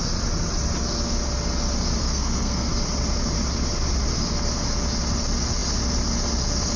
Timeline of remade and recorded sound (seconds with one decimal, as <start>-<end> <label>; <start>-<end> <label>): 0.0-2.0 recorded; 2.0-2.7 remade; 2.7-6.8 recorded